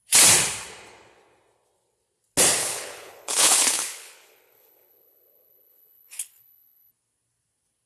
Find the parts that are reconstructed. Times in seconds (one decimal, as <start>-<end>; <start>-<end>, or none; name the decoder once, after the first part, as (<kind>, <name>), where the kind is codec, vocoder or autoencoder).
2.6-6.9 (codec, HILCodec)